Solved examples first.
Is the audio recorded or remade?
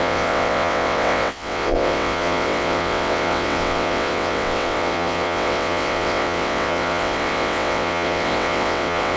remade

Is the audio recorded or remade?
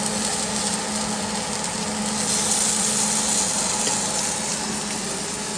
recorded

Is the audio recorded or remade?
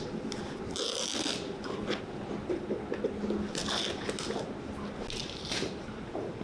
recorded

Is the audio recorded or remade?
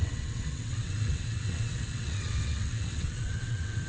remade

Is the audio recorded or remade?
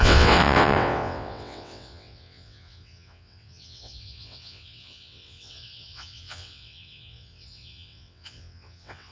remade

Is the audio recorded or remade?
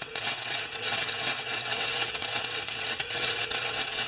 remade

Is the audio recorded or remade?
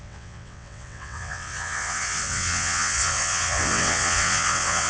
remade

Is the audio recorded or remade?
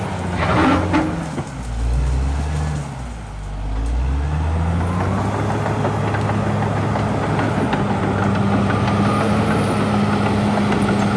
recorded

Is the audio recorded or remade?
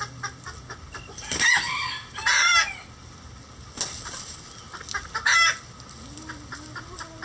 recorded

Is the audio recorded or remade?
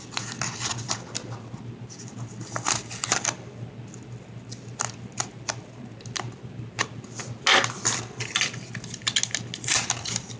recorded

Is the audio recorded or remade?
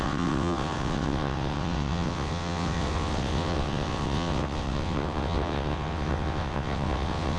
remade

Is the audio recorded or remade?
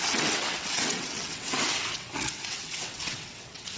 remade